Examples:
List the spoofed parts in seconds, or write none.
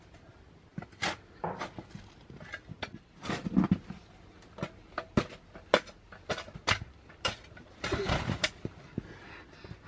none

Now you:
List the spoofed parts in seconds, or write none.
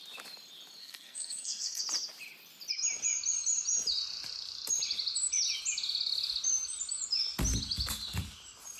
0.8-1.8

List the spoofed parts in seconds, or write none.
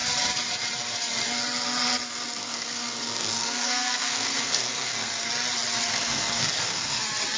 2.4-5.3; 5.9-7.0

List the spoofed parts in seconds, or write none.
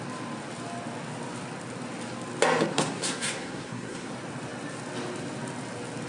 2.7-4.1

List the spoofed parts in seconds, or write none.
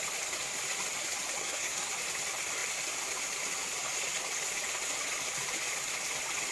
1.4-1.9